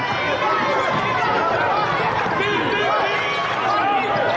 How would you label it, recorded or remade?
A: recorded